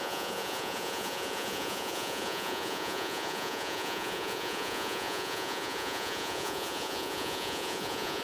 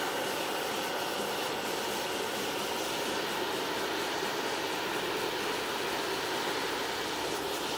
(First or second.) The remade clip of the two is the first